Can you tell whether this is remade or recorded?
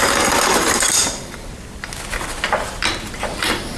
recorded